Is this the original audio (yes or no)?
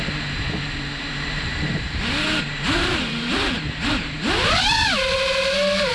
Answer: no